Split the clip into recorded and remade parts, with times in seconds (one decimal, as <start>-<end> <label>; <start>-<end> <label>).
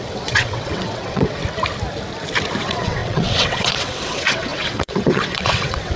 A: 0.0-1.4 remade; 1.4-2.6 recorded; 2.6-6.0 remade